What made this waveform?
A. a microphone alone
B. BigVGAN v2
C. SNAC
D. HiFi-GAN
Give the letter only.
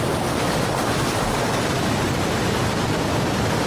A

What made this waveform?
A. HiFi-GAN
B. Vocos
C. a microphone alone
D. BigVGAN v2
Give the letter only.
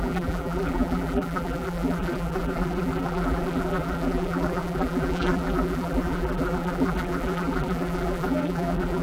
D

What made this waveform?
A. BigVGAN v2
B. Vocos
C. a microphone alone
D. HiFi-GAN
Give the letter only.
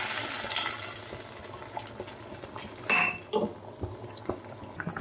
C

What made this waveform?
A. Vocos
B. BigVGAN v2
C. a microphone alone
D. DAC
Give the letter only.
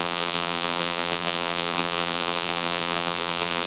B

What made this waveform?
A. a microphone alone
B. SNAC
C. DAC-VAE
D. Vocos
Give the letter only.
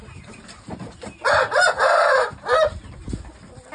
A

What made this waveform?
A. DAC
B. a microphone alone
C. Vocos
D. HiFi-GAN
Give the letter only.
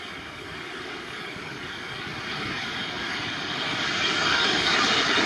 A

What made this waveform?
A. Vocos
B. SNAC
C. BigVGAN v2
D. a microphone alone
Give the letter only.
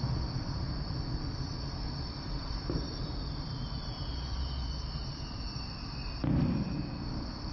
D